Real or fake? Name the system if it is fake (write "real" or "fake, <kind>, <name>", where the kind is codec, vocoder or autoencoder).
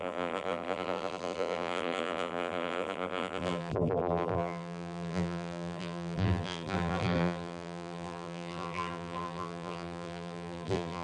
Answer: fake, vocoder, BigVGAN v2